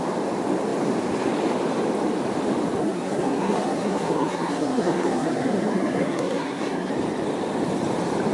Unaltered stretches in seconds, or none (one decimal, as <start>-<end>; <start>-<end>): 0.0-2.8; 6.9-8.3